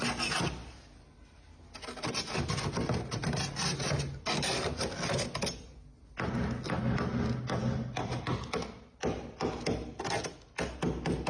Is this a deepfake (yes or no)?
no